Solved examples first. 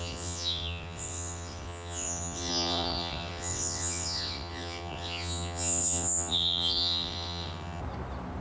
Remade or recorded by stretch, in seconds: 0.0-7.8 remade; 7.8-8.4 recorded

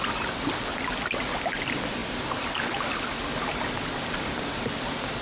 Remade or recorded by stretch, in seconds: 0.0-5.2 recorded

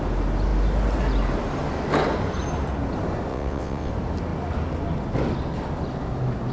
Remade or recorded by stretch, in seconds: 0.0-3.3 recorded; 3.3-3.9 remade; 3.9-6.5 recorded

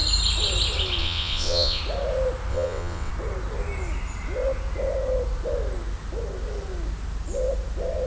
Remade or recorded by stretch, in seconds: 0.0-1.0 recorded; 1.0-1.8 remade; 1.8-2.5 recorded; 2.5-3.1 remade; 3.1-8.1 recorded

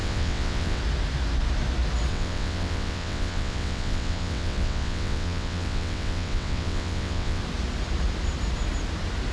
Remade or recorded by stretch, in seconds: 0.0-0.8 remade; 0.8-2.1 recorded; 2.1-7.4 remade; 7.4-9.3 recorded